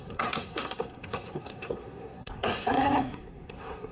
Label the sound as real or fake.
fake